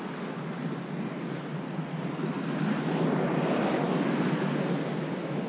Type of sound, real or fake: real